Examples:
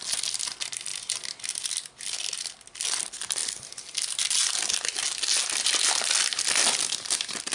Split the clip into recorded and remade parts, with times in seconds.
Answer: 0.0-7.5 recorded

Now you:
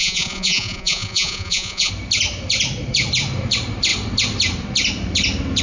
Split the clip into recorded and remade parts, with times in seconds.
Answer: 0.0-1.9 remade; 1.9-5.6 recorded

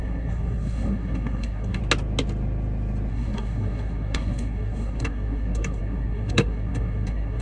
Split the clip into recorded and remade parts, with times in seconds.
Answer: 0.0-1.8 remade; 1.8-3.1 recorded; 3.1-7.4 remade

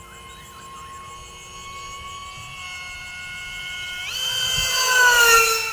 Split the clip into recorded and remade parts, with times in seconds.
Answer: 0.0-5.7 recorded

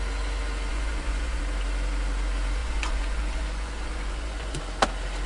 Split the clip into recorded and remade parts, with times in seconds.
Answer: 0.0-0.7 recorded; 0.7-1.4 remade; 1.4-2.6 recorded; 2.6-4.6 remade; 4.6-5.3 recorded